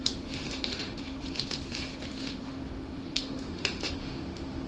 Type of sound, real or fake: fake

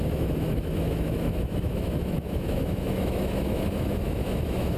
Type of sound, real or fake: fake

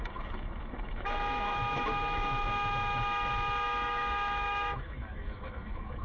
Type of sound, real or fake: fake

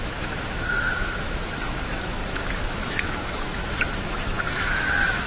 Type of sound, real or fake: fake